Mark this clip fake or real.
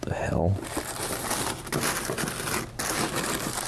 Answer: real